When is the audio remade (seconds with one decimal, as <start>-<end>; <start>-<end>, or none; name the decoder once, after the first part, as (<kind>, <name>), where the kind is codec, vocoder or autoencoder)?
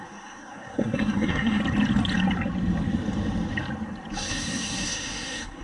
0.0-1.6 (codec, SNAC); 4.3-5.6